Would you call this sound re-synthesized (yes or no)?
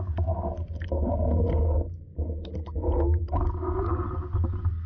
no